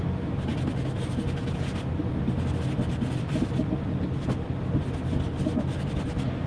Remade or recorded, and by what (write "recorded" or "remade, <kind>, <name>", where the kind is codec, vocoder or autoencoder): recorded